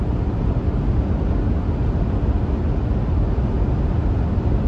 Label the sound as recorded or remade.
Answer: recorded